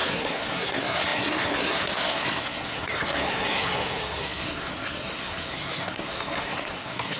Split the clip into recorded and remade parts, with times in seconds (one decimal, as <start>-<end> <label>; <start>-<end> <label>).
0.0-7.2 remade